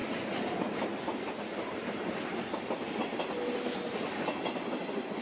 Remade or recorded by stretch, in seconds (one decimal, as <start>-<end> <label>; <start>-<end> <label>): 0.0-2.7 remade; 2.7-5.2 recorded